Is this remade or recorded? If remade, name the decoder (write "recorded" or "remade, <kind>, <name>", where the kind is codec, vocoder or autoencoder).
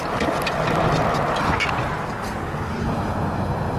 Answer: recorded